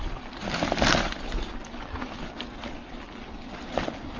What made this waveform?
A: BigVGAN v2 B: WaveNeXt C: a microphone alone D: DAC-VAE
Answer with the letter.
C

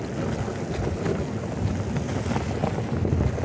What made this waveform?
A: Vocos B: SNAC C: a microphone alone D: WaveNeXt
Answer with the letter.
C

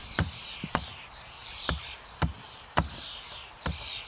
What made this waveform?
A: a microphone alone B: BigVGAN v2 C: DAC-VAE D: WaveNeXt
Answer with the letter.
A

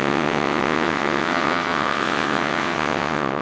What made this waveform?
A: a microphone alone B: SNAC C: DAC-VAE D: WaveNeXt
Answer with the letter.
D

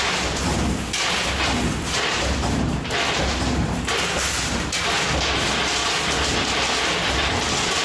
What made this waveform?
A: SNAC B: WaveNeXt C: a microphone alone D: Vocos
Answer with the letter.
C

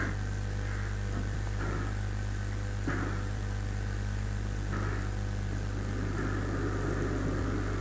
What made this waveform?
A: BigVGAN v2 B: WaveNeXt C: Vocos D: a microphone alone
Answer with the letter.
D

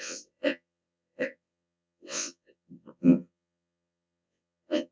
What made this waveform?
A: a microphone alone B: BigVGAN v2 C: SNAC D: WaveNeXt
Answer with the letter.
D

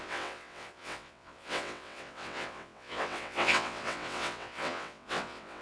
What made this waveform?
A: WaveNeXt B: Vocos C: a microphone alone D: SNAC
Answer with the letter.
A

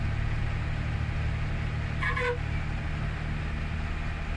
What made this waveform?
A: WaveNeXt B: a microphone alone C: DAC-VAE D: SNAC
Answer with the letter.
B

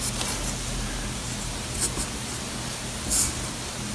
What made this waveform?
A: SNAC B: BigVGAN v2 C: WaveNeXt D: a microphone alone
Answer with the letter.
D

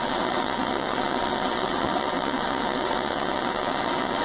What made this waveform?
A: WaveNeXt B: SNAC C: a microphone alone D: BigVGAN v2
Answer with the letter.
A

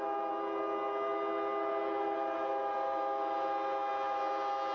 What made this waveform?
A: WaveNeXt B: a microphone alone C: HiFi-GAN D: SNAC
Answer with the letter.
B